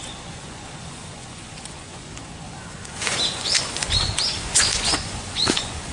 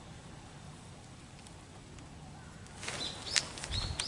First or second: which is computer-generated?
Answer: first